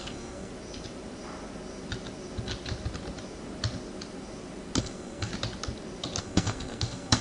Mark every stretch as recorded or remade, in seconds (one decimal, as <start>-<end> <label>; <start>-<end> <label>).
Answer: 0.0-0.5 remade; 0.5-4.8 recorded; 4.8-5.3 remade; 5.3-6.2 recorded; 6.2-7.2 remade